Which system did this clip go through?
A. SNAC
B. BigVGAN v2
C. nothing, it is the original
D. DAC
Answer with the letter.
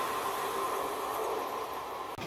C